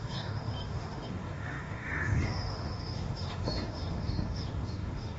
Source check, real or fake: fake